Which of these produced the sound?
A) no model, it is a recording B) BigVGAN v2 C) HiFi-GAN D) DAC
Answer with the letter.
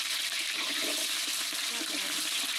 B